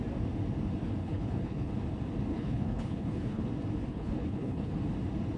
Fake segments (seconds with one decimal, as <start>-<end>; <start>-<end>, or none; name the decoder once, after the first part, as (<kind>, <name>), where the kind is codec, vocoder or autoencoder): 1.0-1.7 (codec, HILCodec); 2.3-3.4; 3.9-4.7